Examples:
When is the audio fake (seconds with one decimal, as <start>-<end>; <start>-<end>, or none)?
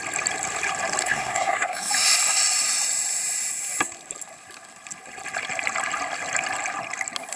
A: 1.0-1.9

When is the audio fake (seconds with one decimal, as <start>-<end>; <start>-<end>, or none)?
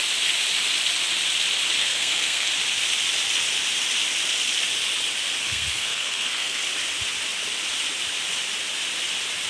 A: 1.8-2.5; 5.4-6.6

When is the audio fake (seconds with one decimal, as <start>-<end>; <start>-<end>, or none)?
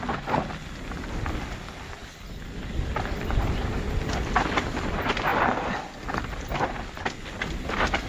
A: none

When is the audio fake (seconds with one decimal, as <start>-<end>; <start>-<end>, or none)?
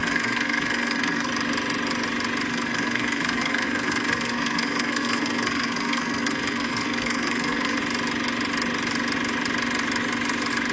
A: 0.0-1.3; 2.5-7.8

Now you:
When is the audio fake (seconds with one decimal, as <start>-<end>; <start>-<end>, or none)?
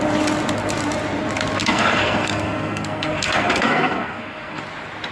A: 1.6-4.6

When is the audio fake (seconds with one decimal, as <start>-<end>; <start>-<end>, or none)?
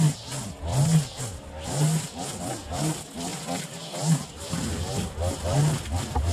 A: none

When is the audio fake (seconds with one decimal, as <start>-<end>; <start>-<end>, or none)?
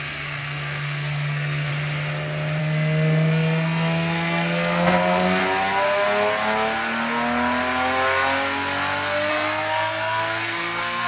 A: 0.0-1.7; 2.6-5.4; 9.3-11.1